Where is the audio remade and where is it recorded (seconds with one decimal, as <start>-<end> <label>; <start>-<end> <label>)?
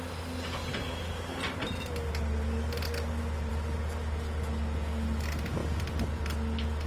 0.0-6.9 recorded